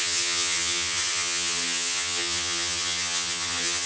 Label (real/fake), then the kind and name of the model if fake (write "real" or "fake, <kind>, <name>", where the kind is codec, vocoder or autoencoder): fake, vocoder, HiFi-GAN